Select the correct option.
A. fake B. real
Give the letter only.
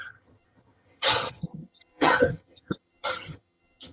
A